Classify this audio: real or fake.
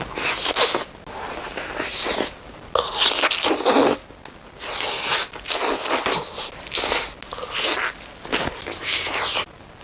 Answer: real